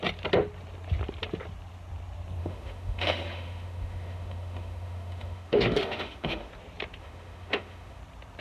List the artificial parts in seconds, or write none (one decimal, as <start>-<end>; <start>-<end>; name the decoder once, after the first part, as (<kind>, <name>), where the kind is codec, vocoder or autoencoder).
2.4-6.5 (autoencoder, DAC-VAE); 7.0-8.0